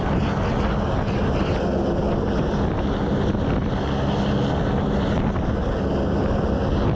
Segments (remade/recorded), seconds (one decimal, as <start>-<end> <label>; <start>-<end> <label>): 0.0-7.0 recorded